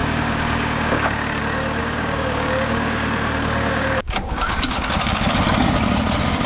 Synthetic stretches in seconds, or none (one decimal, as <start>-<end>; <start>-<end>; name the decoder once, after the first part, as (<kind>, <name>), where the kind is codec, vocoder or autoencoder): 0.0-1.4 (codec, DAC); 1.8-5.7